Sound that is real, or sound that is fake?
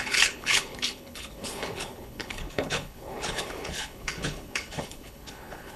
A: fake